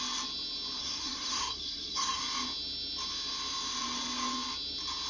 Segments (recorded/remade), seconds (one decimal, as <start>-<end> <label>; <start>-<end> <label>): 0.0-0.8 recorded; 0.8-2.2 remade; 2.2-5.1 recorded